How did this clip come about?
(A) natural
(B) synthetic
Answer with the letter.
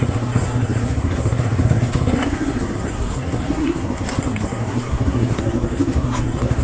B